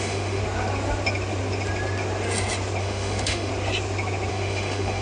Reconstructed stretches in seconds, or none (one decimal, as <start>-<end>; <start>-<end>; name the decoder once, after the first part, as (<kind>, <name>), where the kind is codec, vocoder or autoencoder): 0.0-0.4 (autoencoder, DAC-VAE); 2.8-3.5; 4.3-5.0